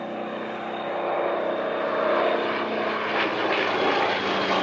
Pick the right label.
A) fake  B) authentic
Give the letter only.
B